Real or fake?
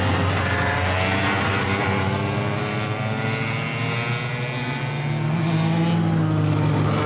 real